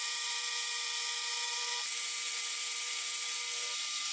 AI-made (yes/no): yes